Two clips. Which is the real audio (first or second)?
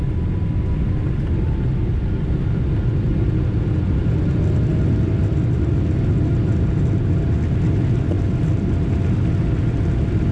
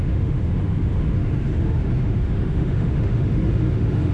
first